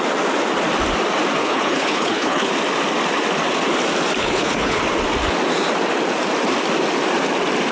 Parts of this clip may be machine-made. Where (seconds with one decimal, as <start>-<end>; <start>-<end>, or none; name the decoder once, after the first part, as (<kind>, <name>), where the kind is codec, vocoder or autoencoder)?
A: 1.4-2.5 (codec, HILCodec); 4.2-4.8